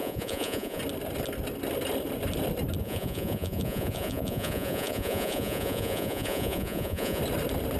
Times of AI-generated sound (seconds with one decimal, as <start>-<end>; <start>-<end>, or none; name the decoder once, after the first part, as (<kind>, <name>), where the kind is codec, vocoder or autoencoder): 0.0-0.8 (vocoder, Vocos); 2.8-7.2